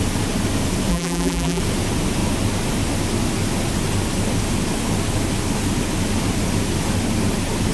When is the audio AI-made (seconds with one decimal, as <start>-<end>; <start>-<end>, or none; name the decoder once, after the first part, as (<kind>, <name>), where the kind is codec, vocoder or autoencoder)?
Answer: 0.9-1.6 (vocoder, BigVGAN v2)

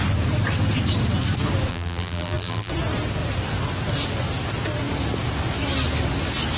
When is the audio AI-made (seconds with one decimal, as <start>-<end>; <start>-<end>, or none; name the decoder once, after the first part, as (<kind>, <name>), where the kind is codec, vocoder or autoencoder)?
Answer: 1.7-2.7 (vocoder, BigVGAN v2)

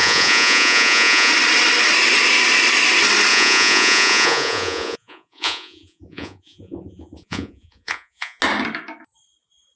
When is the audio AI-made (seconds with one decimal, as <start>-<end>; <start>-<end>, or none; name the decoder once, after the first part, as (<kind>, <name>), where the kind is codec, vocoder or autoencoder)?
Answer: 0.0-1.3 (vocoder, Vocos); 3.3-8.4

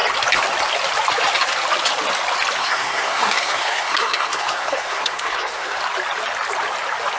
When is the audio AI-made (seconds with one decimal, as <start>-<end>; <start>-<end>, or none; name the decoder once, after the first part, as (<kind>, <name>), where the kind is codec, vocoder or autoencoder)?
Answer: 2.6-5.8 (codec, SNAC)

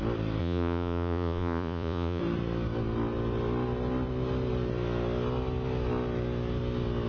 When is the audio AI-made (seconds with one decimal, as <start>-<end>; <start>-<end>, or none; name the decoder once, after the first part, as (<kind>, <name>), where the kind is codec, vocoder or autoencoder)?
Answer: 0.4-2.2 (vocoder, Vocos)

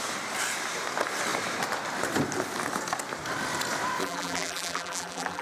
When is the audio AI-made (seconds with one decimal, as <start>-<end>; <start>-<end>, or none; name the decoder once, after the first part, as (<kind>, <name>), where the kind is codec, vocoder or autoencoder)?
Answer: 4.0-5.4 (vocoder, BigVGAN v2)